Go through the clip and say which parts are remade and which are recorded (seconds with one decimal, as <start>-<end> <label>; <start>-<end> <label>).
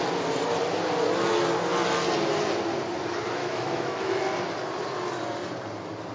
0.0-3.4 recorded; 3.4-4.2 remade; 4.2-6.1 recorded